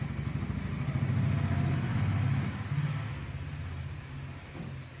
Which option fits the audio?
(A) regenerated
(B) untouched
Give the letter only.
B